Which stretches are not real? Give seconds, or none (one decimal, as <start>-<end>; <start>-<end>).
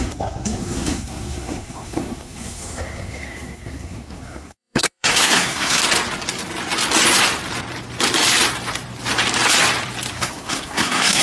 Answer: 0.0-5.8; 10.1-11.2